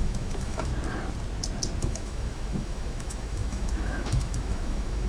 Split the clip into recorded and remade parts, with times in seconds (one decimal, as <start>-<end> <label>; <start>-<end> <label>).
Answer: 0.0-0.7 remade; 0.7-1.8 recorded; 1.8-5.1 remade